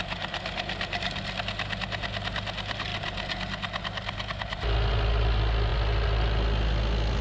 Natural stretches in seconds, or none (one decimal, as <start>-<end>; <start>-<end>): 0.0-7.2